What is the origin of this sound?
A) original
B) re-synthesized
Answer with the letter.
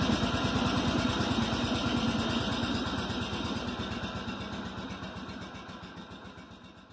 A